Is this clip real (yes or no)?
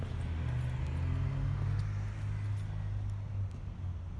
yes